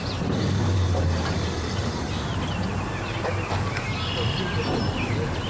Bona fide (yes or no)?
yes